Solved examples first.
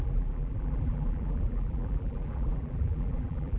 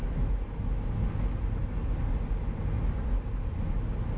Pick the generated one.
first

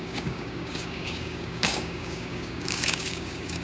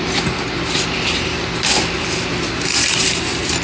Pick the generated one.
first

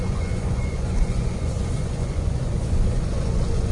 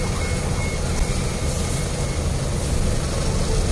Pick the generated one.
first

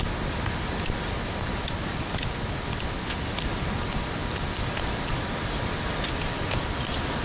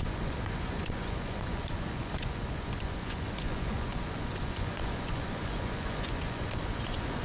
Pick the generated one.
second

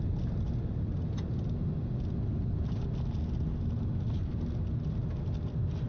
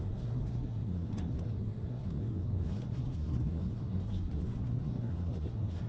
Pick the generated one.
second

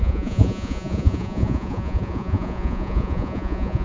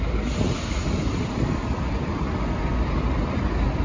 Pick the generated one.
first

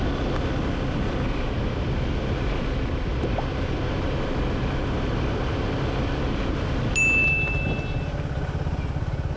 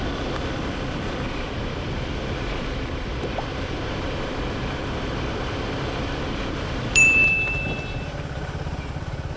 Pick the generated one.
second